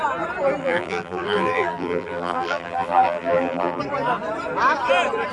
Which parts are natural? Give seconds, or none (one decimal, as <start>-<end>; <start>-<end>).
0.0-0.6; 3.8-5.3